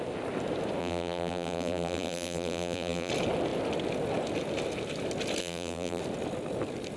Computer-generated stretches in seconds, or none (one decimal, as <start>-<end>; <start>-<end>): 0.8-3.1; 5.4-6.0

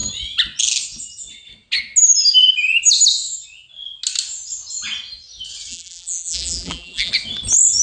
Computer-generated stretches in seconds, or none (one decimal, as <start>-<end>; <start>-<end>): 5.7-7.1

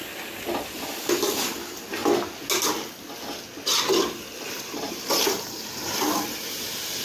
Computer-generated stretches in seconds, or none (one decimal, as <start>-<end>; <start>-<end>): 1.1-2.0; 4.5-7.0

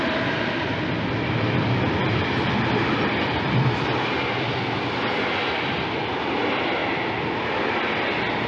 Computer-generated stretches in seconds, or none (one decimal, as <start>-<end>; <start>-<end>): none

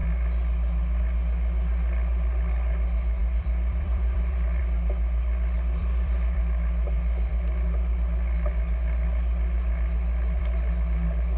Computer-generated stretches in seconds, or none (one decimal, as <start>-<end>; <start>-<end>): 3.2-4.6; 5.8-6.4

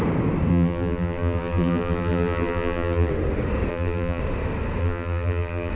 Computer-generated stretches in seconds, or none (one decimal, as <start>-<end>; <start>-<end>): 0.5-3.1; 3.7-4.2; 4.8-5.7

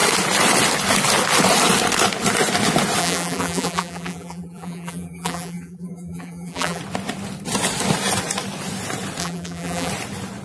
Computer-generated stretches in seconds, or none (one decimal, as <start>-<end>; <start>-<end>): 3.0-6.8; 9.2-9.9

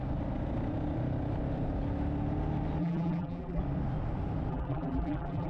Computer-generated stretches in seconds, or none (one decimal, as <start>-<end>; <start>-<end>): 2.8-3.6; 4.5-5.5